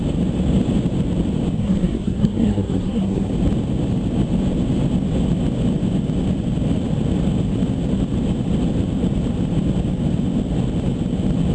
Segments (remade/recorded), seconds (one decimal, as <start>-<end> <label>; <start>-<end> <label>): 0.0-1.6 recorded; 1.6-3.3 remade; 3.3-11.5 recorded